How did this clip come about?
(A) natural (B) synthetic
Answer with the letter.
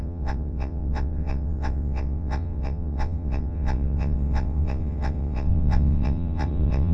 B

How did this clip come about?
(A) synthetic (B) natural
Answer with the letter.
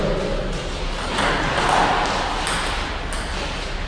B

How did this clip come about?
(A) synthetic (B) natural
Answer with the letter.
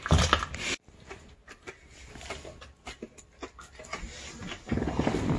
B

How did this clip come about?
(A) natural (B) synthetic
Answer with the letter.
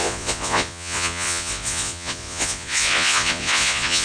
B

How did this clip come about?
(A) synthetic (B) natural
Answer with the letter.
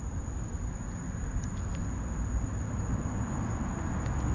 B